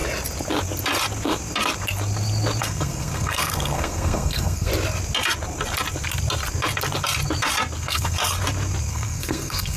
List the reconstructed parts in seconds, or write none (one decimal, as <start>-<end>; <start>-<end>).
2.6-4.7; 7.8-8.2; 8.9-9.8